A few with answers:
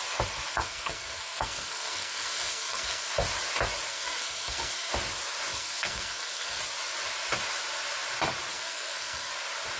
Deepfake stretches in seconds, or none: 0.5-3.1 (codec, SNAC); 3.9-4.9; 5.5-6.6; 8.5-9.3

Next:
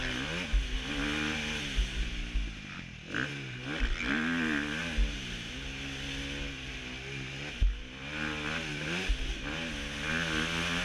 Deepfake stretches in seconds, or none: none

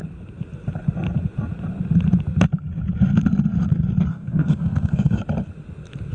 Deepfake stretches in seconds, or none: 4.1-5.2 (codec, SNAC)